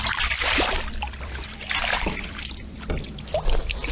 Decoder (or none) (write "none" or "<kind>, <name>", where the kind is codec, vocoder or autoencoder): vocoder, BigVGAN v2